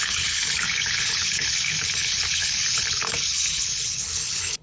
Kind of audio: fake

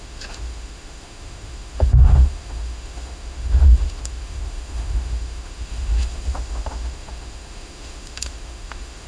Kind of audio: fake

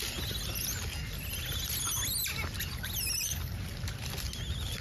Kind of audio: real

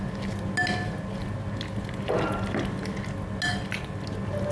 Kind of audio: real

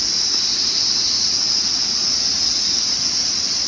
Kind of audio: real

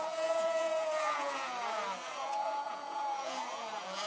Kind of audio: fake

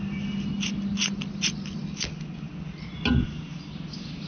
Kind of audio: real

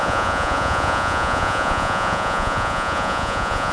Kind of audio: fake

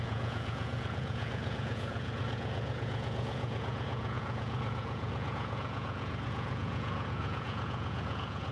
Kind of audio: fake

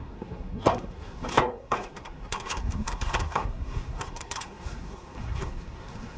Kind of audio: fake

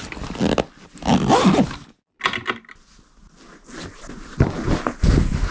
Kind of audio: real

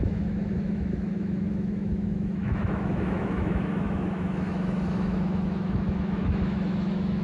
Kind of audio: fake